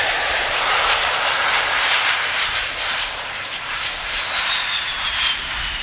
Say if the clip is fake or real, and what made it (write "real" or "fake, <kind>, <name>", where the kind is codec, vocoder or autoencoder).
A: fake, vocoder, BigVGAN v2